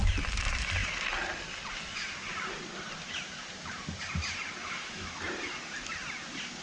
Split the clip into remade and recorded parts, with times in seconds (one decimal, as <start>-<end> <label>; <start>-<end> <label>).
0.0-4.6 recorded; 4.6-5.2 remade; 5.2-6.6 recorded